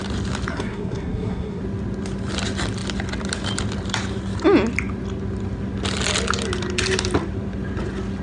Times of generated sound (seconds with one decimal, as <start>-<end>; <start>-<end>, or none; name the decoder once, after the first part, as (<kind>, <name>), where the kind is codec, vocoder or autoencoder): 0.5-1.6 (codec, SNAC)